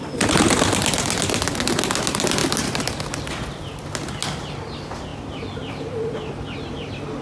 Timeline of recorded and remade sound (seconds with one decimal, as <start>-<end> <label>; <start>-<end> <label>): 0.0-7.2 recorded